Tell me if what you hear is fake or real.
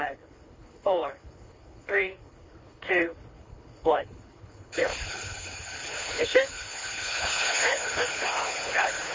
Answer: fake